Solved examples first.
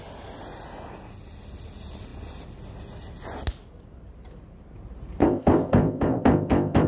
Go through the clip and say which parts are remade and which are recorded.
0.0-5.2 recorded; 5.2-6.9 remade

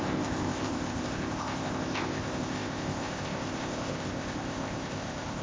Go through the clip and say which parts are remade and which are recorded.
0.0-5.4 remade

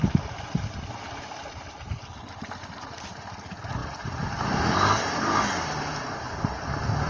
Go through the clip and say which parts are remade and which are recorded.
0.0-7.1 recorded